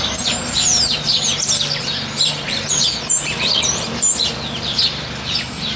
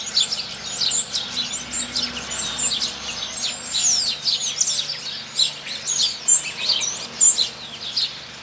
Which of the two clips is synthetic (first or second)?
first